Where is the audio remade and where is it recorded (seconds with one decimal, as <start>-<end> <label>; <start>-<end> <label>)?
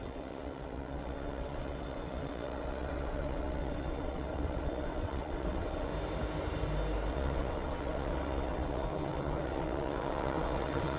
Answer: 0.0-5.9 remade; 5.9-7.1 recorded; 7.1-11.0 remade